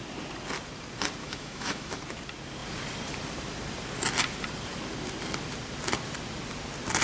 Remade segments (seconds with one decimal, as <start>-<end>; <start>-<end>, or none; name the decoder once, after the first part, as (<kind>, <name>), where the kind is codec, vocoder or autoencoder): 1.2-2.0 (autoencoder, DAC-VAE)